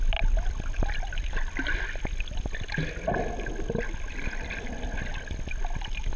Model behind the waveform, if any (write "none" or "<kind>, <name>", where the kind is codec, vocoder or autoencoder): none